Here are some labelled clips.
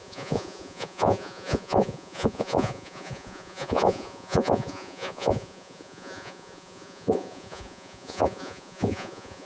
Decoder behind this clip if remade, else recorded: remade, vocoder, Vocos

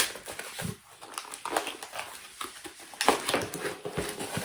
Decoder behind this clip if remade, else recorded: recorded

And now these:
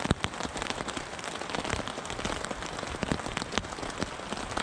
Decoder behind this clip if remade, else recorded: recorded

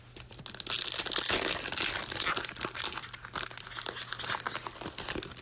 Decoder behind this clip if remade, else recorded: recorded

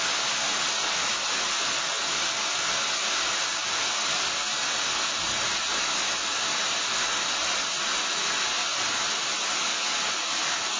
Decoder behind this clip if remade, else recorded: recorded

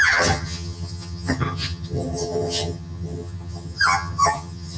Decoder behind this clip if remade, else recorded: remade, vocoder, HiFi-GAN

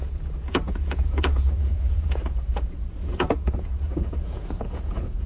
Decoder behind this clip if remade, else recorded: remade, vocoder, Vocos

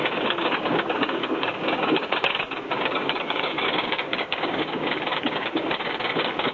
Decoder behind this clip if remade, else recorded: remade, codec, DAC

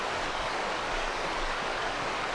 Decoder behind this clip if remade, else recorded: remade, codec, DAC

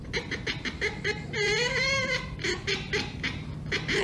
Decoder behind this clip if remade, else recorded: remade, vocoder, BigVGAN v2